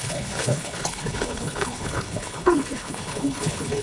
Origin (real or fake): fake